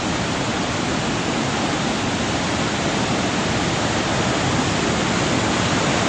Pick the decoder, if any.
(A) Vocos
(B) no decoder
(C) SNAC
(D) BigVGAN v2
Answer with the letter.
B